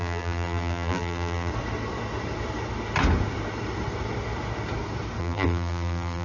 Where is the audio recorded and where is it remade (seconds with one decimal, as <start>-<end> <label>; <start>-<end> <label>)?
0.0-1.5 remade; 1.5-5.2 recorded; 5.2-6.2 remade